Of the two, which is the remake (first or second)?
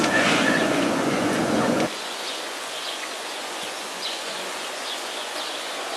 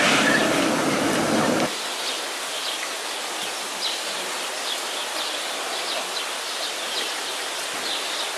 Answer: first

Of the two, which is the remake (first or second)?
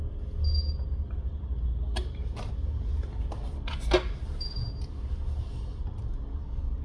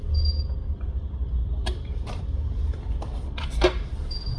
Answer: second